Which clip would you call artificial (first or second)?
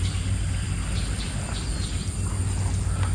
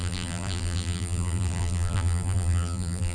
second